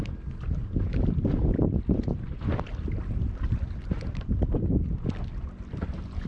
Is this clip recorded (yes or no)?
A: yes